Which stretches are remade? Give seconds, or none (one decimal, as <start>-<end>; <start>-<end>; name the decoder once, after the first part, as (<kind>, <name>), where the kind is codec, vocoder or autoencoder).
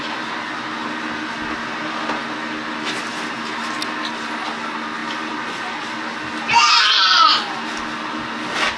none